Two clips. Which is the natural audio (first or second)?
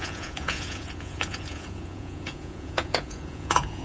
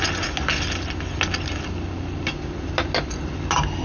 second